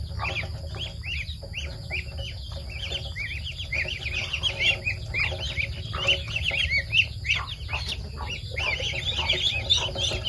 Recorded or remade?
recorded